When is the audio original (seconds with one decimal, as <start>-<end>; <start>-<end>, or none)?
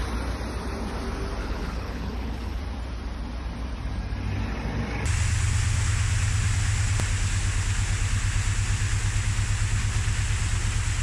0.0-1.4; 2.6-11.0